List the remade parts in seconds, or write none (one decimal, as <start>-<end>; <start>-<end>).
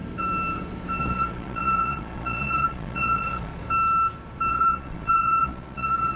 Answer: 1.0-3.5; 4.5-6.2